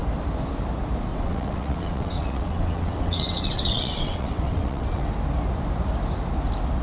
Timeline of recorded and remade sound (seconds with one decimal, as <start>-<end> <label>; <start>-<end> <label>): 0.0-1.1 recorded; 1.1-5.1 remade; 5.1-6.8 recorded